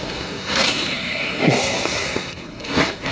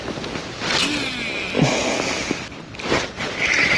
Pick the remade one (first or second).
first